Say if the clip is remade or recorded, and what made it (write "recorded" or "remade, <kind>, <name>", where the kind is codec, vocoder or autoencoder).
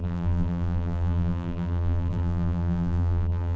remade, vocoder, BigVGAN v2